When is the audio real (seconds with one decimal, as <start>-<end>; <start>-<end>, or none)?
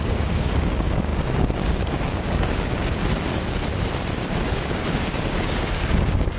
3.0-4.3